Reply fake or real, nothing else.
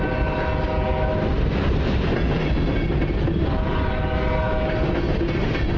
real